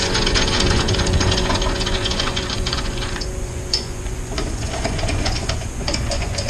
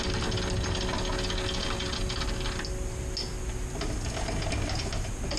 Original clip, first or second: second